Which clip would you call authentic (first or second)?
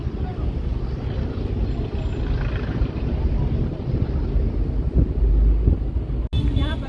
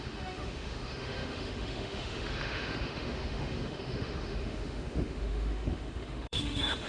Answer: first